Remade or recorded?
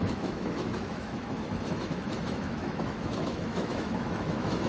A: remade